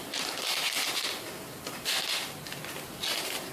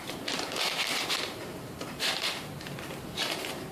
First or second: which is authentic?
first